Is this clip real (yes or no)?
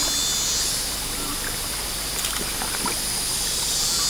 yes